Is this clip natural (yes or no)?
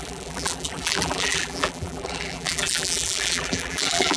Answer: no